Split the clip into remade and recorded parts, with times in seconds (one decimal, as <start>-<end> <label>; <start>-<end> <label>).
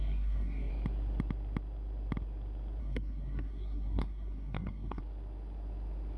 0.0-0.7 remade; 0.7-2.8 recorded; 2.8-5.0 remade; 5.0-6.2 recorded